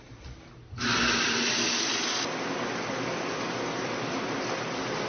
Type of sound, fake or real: real